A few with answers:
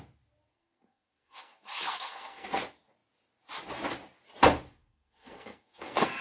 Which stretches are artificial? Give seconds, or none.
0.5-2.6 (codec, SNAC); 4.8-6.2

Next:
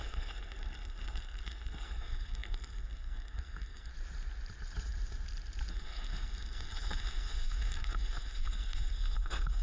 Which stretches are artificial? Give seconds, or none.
0.0-3.9 (codec, SNAC); 5.7-9.6

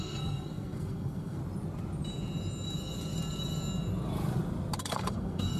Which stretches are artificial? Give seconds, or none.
0.0-1.4 (codec, SNAC); 4.8-5.6

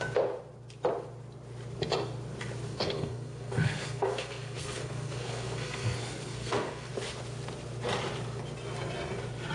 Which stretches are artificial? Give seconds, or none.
2.7-6.9 (codec, SNAC)

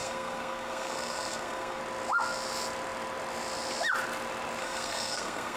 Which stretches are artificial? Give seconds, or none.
0.0-1.8 (codec, SNAC); 4.6-5.6

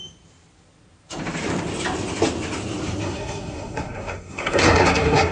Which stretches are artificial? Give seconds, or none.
3.0-5.3 (codec, SNAC)